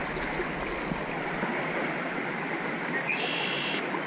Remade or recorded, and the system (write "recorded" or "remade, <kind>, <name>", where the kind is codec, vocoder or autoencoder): recorded